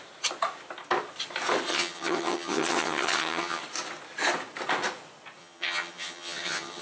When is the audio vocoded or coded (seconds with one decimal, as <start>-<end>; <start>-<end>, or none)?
1.7-3.6; 5.4-6.8